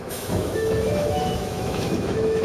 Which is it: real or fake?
fake